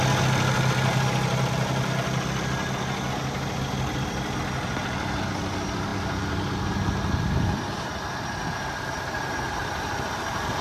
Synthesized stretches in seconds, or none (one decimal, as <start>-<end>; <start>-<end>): none